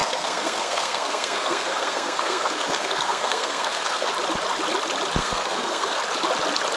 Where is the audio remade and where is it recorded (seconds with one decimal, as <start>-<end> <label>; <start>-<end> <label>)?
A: 0.0-4.1 remade; 4.1-5.2 recorded; 5.2-6.0 remade; 6.0-6.8 recorded